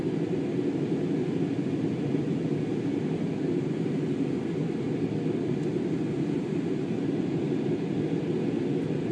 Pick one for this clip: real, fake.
real